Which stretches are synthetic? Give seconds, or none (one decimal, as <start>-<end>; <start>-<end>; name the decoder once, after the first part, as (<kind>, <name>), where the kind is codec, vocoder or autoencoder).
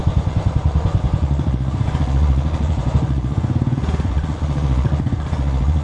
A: 0.0-5.8 (vocoder, Vocos)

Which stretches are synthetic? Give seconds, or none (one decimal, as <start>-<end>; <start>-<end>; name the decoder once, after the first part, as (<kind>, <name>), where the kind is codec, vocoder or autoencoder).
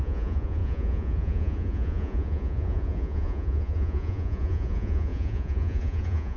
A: 0.0-6.4 (vocoder, Vocos)